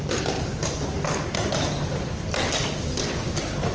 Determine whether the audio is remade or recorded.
recorded